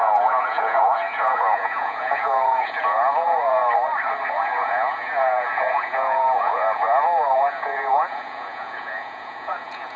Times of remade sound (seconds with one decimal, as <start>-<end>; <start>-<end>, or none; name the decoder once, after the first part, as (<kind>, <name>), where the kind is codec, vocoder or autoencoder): 0.0-3.6 (vocoder, Vocos); 4.3-10.0